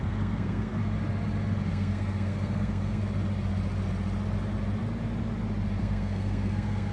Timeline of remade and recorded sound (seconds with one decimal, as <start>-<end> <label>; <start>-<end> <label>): 0.0-0.8 remade; 0.8-1.7 recorded; 1.7-3.0 remade; 3.0-5.8 recorded; 5.8-6.9 remade